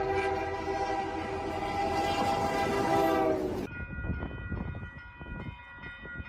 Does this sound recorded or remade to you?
recorded